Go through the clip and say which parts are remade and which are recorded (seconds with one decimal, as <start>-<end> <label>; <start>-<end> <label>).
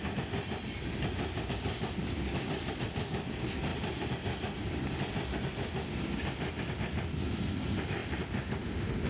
0.0-9.1 recorded